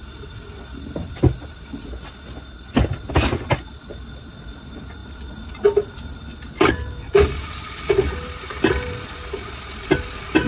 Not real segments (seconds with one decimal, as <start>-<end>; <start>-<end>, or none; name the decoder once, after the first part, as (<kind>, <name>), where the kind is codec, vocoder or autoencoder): none